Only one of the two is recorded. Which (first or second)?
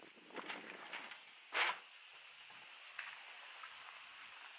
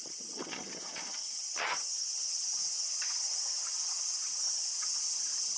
first